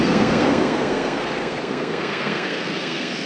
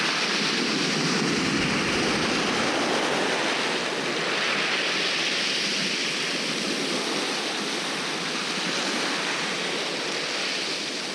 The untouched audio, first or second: second